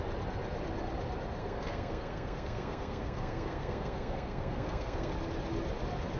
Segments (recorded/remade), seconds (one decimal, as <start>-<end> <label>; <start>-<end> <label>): 0.0-1.4 recorded; 1.4-5.1 remade; 5.1-6.2 recorded